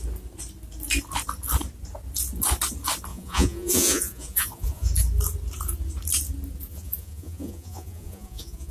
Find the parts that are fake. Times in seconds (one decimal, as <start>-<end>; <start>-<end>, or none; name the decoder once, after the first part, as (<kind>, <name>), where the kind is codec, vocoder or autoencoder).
3.1-4.9 (vocoder, Vocos); 6.7-8.7